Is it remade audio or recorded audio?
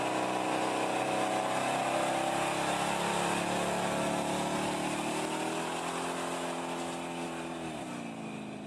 recorded